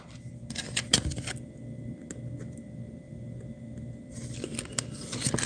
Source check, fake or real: real